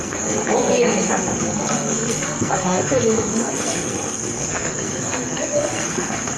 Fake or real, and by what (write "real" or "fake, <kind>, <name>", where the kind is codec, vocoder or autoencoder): fake, codec, SNAC